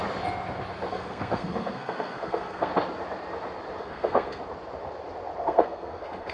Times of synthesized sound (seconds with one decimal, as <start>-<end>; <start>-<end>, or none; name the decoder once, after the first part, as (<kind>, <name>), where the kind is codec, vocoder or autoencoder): 0.9-2.7 (codec, SNAC); 3.8-4.4; 5.4-6.3